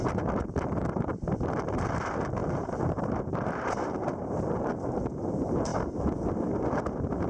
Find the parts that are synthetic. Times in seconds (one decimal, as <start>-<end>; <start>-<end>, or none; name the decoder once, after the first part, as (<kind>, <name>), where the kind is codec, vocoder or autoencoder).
0.0-1.1 (vocoder, BigVGAN v2); 1.7-7.3